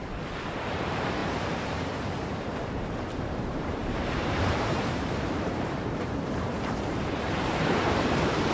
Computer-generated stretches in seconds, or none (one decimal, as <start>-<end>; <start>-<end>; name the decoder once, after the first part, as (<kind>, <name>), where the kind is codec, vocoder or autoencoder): 0.6-8.5 (vocoder, BigVGAN v2)